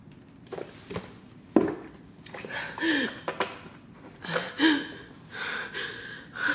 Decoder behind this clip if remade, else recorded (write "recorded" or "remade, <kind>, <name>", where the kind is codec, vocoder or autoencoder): recorded